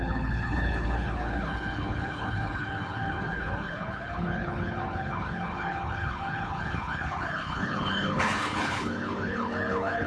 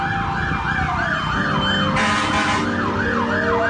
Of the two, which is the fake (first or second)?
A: first